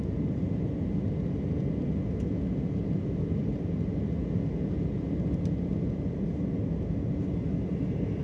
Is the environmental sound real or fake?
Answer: real